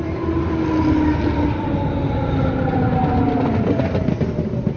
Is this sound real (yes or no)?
yes